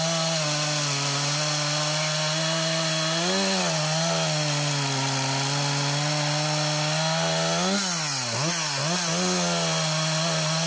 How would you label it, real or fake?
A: real